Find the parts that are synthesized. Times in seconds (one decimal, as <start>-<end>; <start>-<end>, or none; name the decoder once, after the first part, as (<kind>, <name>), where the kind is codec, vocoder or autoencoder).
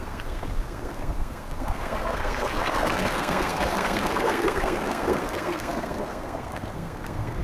0.0-7.4 (codec, SNAC)